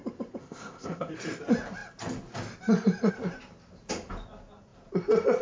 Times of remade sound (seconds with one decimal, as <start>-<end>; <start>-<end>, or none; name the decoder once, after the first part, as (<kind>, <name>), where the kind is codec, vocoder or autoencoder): 0.4-1.1 (codec, ZipCodec)